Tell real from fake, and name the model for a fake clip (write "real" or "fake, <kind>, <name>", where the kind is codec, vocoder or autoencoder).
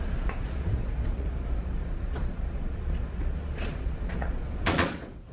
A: fake, vocoder, Vocos